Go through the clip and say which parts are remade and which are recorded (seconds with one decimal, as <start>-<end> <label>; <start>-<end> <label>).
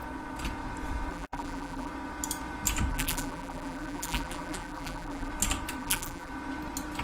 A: 0.0-1.1 recorded; 1.1-1.9 remade; 1.9-2.9 recorded; 2.9-5.3 remade; 5.3-5.8 recorded; 5.8-6.3 remade; 6.3-7.0 recorded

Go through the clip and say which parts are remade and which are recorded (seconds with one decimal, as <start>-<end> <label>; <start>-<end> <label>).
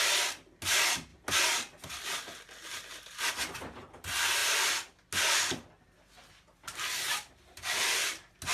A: 0.0-8.5 recorded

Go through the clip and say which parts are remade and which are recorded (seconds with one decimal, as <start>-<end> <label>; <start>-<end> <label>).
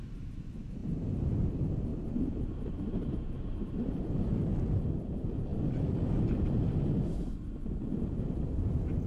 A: 0.0-0.8 recorded; 0.8-1.5 remade; 1.5-1.9 recorded; 1.9-4.0 remade; 4.0-9.1 recorded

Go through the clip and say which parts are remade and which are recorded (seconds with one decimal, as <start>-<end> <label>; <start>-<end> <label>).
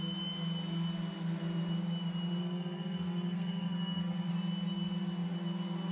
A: 0.0-2.4 recorded; 2.4-4.3 remade; 4.3-5.9 recorded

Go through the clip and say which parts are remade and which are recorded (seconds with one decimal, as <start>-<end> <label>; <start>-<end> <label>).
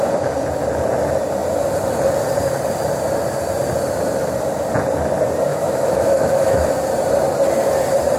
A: 0.0-5.5 recorded; 5.5-6.7 remade; 6.7-8.2 recorded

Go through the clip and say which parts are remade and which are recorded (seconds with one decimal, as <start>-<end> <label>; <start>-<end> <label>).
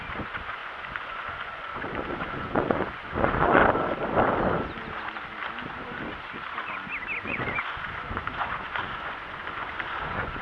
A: 0.0-3.6 remade; 3.6-7.2 recorded; 7.2-10.4 remade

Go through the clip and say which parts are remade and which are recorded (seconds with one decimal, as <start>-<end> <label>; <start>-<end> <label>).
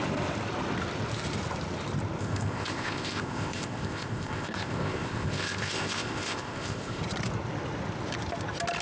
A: 0.0-2.2 recorded; 2.2-7.0 remade; 7.0-8.8 recorded